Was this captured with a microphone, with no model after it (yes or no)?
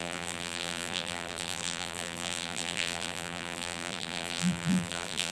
no